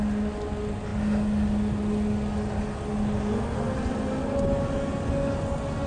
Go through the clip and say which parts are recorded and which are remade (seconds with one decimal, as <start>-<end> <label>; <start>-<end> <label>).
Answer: 0.0-5.9 recorded